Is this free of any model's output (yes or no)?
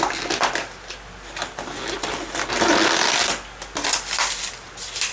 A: yes